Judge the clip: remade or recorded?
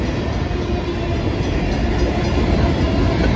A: recorded